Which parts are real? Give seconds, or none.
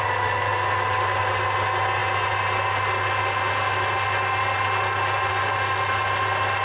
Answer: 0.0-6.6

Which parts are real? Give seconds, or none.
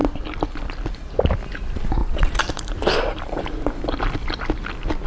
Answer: 0.0-2.0; 3.9-5.1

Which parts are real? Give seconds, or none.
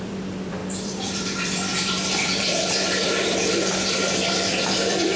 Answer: none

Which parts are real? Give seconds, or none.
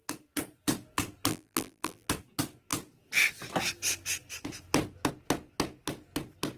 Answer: 0.0-1.3; 2.1-6.6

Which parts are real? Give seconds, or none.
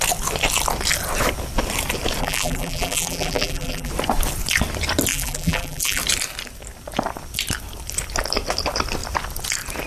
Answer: 0.0-2.2; 3.9-5.1; 6.0-9.9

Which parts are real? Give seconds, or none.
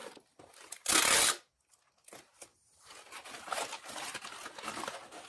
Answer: 0.0-5.3